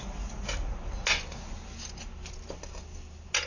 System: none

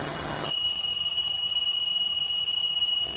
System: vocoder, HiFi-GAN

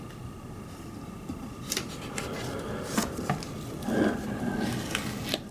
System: none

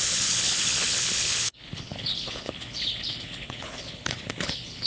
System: codec, HILCodec